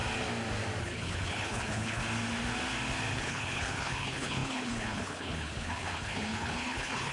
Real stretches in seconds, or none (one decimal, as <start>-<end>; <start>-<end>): 0.0-0.8; 2.0-3.1